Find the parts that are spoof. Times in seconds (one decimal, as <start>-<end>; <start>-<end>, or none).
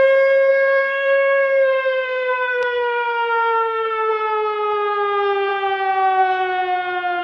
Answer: 0.5-4.1